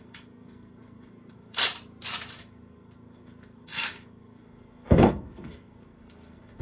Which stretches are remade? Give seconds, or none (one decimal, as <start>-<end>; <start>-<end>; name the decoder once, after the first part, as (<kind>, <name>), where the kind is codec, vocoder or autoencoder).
0.0-1.6 (codec, SNAC); 2.4-6.6